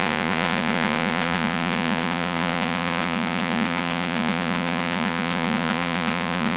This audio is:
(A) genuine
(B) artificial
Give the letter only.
B